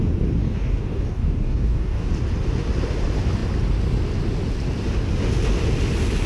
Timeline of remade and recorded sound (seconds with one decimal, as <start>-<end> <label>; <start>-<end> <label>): 0.0-0.4 recorded; 0.4-2.1 remade; 2.1-6.3 recorded